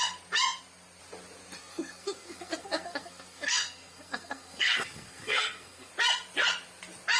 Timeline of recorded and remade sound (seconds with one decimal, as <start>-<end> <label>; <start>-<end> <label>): 0.0-1.6 recorded; 1.6-5.9 remade; 5.9-7.2 recorded